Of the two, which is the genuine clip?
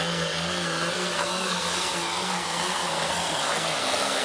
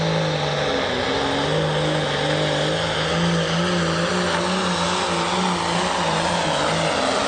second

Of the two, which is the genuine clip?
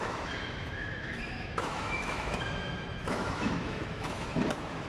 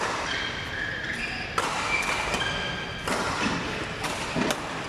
second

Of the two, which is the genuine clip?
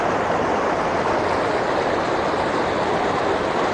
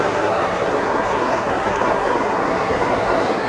first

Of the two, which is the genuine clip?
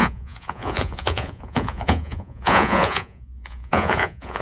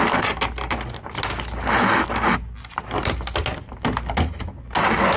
second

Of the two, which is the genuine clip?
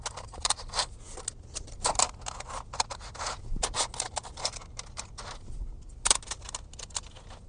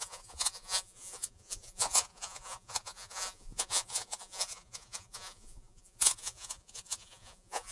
first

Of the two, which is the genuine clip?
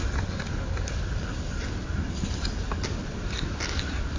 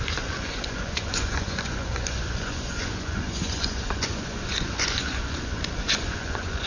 first